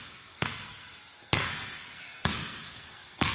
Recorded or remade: remade